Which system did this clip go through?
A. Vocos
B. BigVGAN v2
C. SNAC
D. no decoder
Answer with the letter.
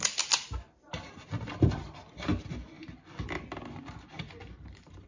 D